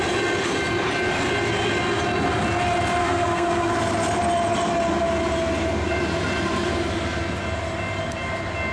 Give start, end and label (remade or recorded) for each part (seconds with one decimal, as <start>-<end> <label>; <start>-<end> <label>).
0.0-3.0 recorded; 3.0-3.7 remade; 3.7-8.7 recorded